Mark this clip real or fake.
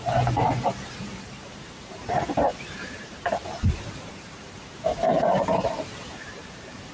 fake